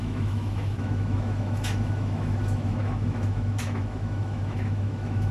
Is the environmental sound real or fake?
fake